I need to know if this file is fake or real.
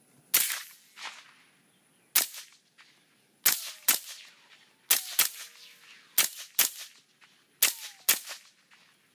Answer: real